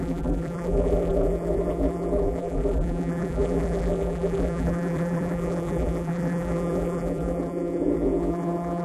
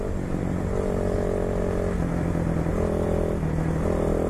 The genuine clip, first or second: second